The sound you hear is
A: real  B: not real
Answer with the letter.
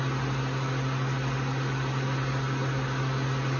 A